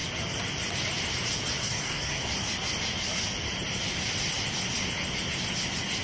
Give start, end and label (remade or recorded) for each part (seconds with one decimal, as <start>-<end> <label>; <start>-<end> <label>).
0.0-1.6 recorded; 1.6-2.2 remade; 2.2-6.0 recorded